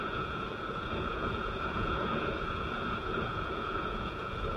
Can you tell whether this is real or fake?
fake